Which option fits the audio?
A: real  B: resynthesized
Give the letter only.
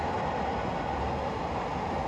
A